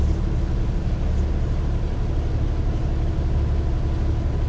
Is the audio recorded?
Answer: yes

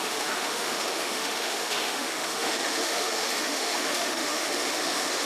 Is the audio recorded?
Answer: no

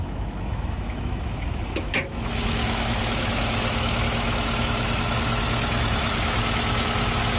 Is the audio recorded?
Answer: no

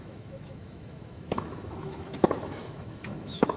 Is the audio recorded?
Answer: no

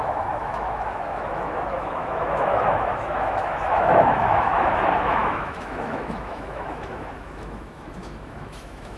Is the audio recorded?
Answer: no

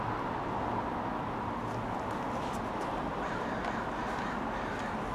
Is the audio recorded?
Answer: yes